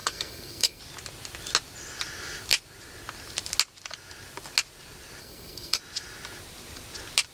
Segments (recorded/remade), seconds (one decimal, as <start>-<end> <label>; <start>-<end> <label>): 0.0-0.8 remade; 0.8-5.2 recorded; 5.2-5.8 remade; 5.8-7.3 recorded